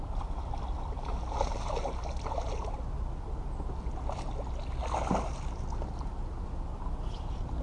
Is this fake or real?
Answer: real